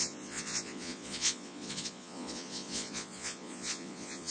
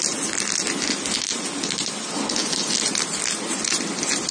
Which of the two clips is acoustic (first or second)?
second